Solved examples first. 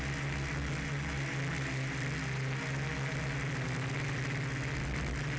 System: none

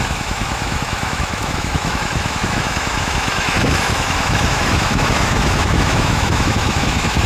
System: autoencoder, DAC-VAE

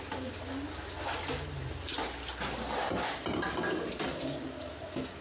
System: vocoder, BigVGAN v2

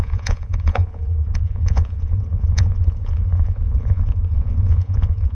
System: vocoder, Vocos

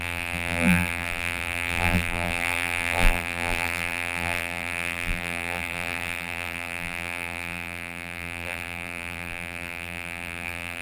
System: vocoder, BigVGAN v2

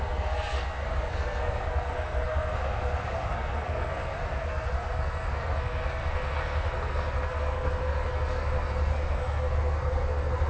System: codec, SNAC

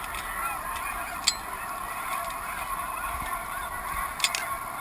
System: none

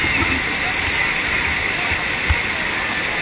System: none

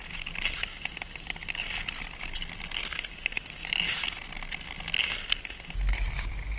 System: none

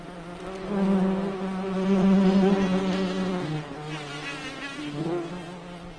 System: none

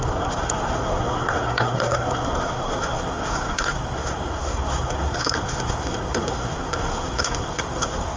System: codec, SNAC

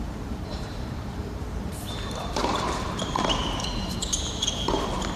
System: vocoder, BigVGAN v2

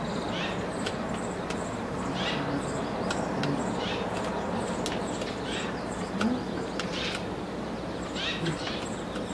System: none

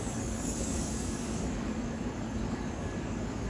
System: codec, DAC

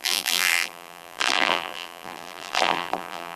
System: vocoder, BigVGAN v2